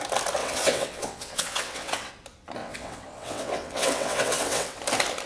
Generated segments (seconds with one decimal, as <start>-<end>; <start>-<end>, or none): 0.4-2.1; 2.6-4.8